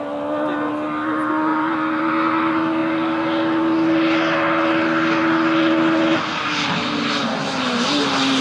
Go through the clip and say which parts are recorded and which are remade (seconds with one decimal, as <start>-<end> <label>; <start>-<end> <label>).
0.0-1.5 recorded; 1.5-2.0 remade; 2.0-8.4 recorded